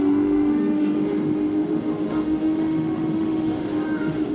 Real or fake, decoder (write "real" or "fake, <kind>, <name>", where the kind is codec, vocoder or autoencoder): fake, autoencoder, DAC-VAE